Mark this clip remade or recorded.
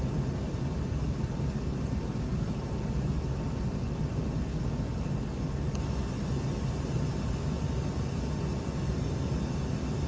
recorded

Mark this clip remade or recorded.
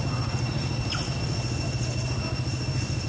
recorded